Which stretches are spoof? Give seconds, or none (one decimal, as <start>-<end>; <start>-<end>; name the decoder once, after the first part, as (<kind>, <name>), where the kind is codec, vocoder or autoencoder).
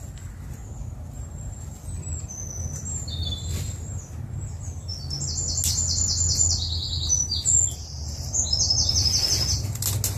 none